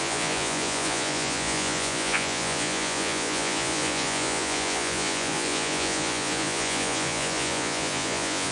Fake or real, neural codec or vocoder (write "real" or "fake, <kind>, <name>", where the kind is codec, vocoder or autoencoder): fake, vocoder, Vocos